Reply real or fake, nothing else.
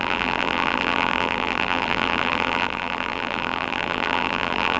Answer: fake